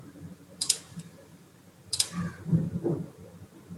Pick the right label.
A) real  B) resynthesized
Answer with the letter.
B